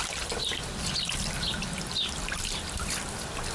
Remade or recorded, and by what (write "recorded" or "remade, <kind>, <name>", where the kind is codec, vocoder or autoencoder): recorded